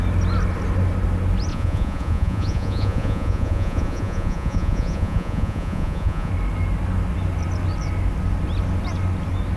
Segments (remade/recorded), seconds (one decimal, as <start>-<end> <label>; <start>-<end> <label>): 0.0-1.5 recorded; 1.5-6.3 remade; 6.3-9.6 recorded